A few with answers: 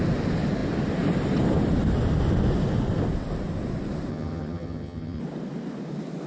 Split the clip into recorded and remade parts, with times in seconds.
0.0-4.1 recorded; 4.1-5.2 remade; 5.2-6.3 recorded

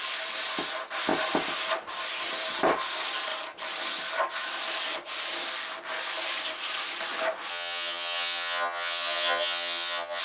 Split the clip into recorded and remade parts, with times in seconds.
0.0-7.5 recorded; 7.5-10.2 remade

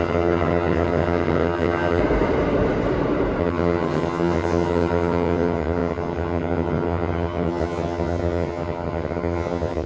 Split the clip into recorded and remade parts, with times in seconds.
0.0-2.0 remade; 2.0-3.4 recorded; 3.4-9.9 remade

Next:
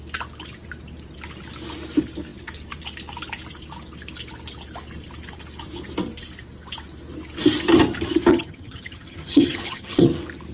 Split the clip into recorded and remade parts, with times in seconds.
0.0-8.3 recorded; 8.3-10.1 remade; 10.1-10.5 recorded